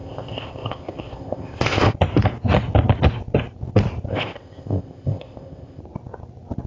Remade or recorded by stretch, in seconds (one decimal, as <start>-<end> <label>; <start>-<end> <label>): 0.0-1.9 remade; 1.9-4.1 recorded; 4.1-5.8 remade; 5.8-6.7 recorded